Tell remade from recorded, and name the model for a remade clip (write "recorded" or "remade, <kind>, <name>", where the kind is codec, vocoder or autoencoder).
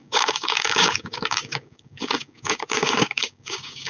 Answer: remade, codec, DAC